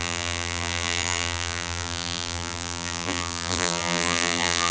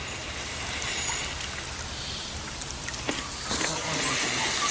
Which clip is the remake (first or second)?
first